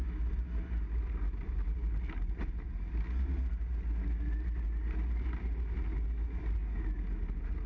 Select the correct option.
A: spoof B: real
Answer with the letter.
B